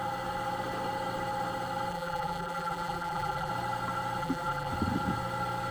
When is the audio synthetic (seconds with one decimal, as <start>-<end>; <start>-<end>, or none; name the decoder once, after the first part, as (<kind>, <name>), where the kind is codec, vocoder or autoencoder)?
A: 1.9-3.5 (vocoder, BigVGAN v2); 4.2-4.7